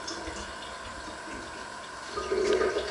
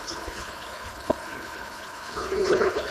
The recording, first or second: first